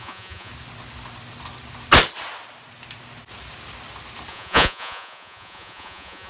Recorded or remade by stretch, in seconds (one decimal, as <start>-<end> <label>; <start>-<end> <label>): 0.0-0.5 remade; 0.5-4.3 recorded; 4.3-6.3 remade